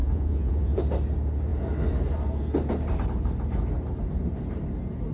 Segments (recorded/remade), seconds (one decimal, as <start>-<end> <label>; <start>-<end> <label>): 0.0-0.8 remade; 0.8-5.1 recorded